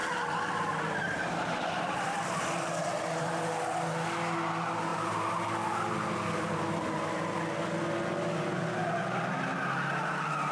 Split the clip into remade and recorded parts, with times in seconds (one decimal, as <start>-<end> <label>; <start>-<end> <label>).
0.0-3.9 remade; 3.9-10.5 recorded